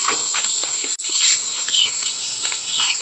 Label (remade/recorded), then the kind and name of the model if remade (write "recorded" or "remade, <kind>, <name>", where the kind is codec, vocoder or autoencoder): remade, codec, SNAC